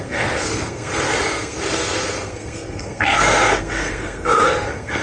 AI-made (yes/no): yes